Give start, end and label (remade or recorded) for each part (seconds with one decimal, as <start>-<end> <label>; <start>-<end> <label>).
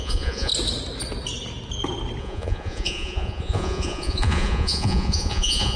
0.0-0.5 remade; 0.5-2.2 recorded; 2.2-5.8 remade